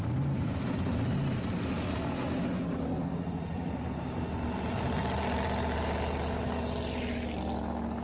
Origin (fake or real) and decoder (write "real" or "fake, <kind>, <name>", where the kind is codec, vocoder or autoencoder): real